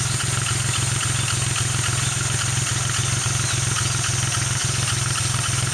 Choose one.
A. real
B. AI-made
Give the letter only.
A